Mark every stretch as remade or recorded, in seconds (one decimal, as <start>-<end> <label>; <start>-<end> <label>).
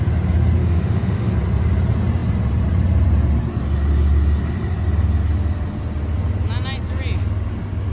0.0-0.6 recorded; 0.6-1.3 remade; 1.3-7.9 recorded